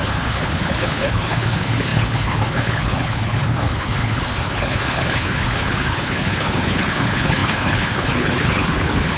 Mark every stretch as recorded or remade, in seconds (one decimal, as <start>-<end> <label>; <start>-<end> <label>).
0.0-9.2 remade